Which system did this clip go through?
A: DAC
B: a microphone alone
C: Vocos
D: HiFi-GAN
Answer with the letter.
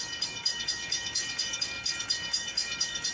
A